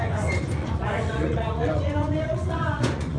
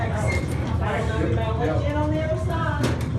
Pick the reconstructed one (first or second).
first